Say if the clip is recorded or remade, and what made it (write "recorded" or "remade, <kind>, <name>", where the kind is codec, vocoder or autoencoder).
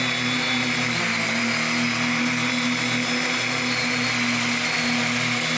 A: recorded